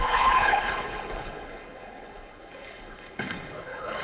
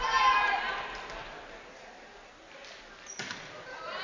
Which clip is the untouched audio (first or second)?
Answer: second